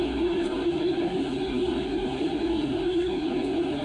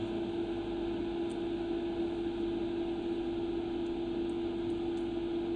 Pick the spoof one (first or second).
first